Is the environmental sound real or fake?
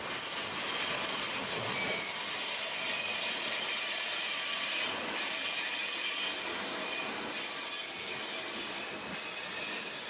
real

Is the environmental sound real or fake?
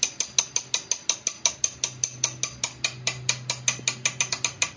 real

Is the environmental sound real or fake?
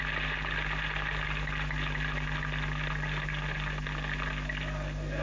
real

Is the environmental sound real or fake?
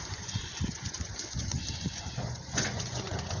fake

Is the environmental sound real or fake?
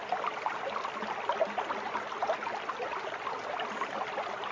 real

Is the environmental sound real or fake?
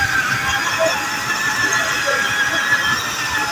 real